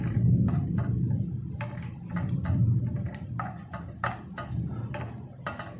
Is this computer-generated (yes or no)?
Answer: no